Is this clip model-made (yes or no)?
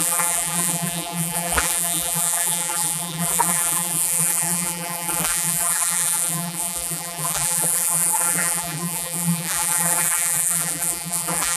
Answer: yes